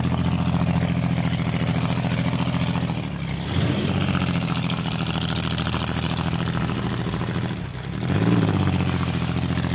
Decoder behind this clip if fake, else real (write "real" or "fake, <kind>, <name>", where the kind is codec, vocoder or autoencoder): real